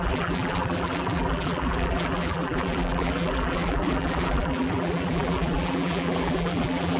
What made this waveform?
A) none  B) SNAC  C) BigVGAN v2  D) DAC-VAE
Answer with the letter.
C